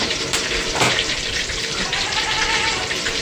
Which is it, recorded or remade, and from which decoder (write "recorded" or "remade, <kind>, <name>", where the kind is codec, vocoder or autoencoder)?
remade, vocoder, BigVGAN v2